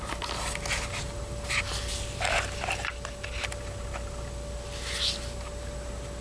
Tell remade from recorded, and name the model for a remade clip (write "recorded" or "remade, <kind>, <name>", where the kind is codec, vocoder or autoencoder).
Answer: recorded